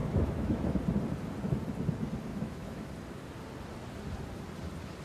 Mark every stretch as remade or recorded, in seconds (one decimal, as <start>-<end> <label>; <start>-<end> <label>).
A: 0.0-0.8 remade; 0.8-2.3 recorded; 2.3-2.9 remade; 2.9-5.0 recorded